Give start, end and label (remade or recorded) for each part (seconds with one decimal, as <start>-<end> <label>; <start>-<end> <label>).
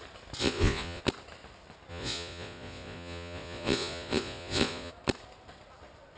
0.0-0.4 recorded; 0.4-1.0 remade; 1.0-1.9 recorded; 1.9-4.9 remade; 4.9-6.2 recorded